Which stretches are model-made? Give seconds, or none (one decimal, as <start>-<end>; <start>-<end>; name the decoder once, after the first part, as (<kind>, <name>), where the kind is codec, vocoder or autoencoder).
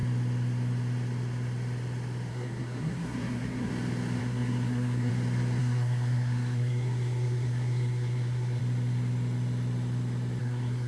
2.3-3.7 (codec, SNAC); 4.2-5.1; 5.6-8.6; 10.4-10.9